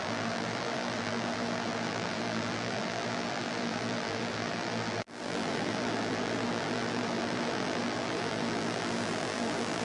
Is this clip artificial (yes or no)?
yes